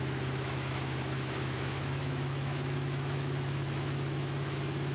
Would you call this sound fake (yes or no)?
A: yes